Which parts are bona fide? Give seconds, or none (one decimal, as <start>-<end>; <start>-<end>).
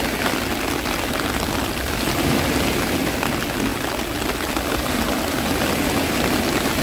0.0-6.8